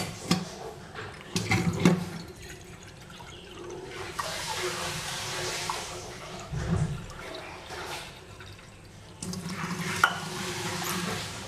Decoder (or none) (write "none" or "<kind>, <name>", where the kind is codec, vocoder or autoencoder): vocoder, BigVGAN v2